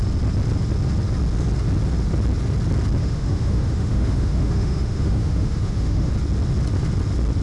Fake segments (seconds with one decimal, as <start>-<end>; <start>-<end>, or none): 3.0-6.1